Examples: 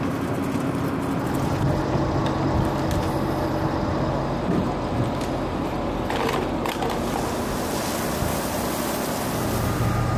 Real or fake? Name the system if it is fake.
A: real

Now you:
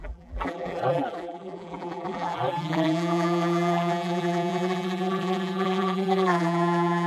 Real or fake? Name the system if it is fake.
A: fake, vocoder, BigVGAN v2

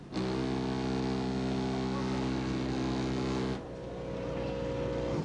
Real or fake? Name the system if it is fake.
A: real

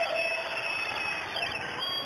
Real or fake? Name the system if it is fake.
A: real